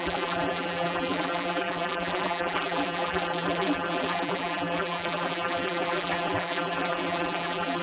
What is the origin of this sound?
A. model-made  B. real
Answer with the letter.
A